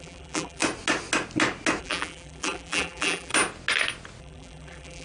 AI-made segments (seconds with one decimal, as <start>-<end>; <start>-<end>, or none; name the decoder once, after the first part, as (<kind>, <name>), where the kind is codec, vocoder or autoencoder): 0.0-0.6 (vocoder, BigVGAN v2); 1.8-3.3; 4.2-5.0